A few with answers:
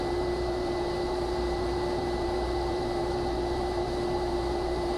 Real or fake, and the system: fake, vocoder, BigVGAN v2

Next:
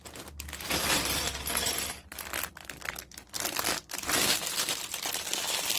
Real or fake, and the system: real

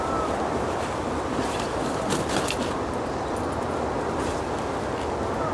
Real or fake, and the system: fake, vocoder, BigVGAN v2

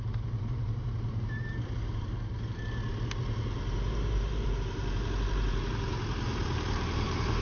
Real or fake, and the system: fake, vocoder, BigVGAN v2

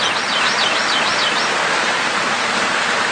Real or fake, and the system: real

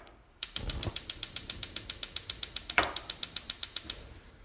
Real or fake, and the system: fake, vocoder, BigVGAN v2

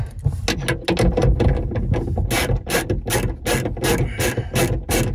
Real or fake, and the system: real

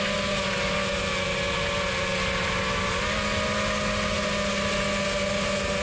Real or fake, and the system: real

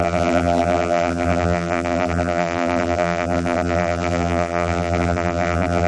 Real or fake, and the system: fake, vocoder, BigVGAN v2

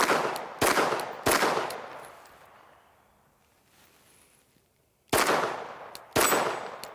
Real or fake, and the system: real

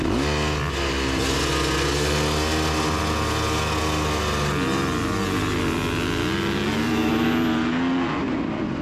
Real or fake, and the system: real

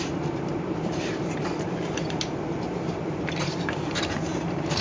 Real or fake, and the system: fake, vocoder, BigVGAN v2